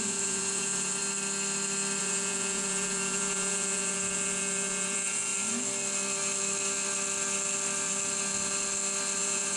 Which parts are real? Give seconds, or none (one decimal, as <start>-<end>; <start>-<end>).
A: 1.0-2.0; 5.3-9.2